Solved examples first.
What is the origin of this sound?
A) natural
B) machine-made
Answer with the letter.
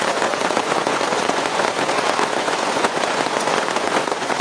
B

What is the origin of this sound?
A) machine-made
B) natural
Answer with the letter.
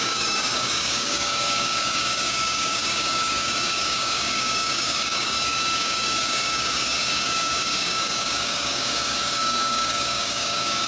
A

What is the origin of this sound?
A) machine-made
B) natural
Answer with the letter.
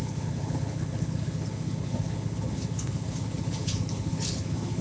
A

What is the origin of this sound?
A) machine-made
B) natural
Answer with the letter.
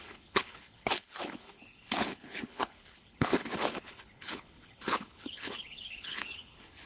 A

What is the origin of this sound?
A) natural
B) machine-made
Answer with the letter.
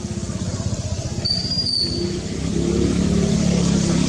A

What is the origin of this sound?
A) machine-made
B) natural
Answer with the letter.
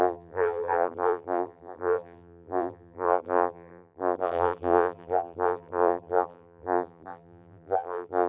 A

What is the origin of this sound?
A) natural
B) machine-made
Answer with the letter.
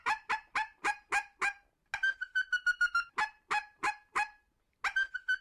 A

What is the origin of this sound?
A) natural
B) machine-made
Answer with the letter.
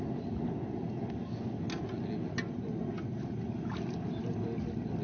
A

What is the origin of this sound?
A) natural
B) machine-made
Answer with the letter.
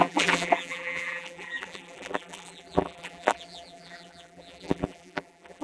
B